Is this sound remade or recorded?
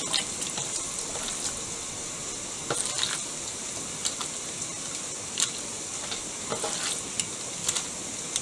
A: recorded